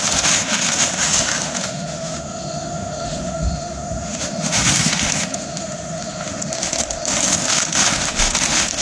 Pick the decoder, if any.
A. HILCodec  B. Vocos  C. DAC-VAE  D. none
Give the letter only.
C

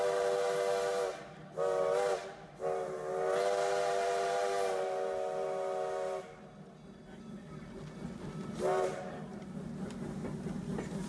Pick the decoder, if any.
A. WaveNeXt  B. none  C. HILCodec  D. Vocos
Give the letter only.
B